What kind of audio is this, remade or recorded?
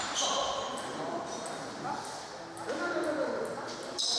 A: recorded